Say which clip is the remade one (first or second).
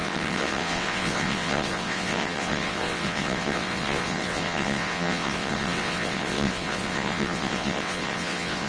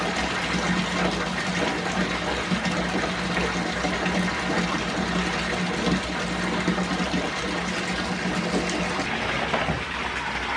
first